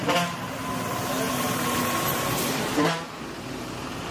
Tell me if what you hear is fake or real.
real